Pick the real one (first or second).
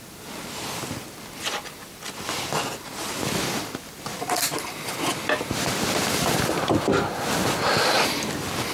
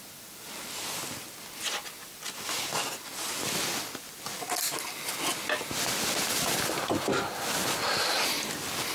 second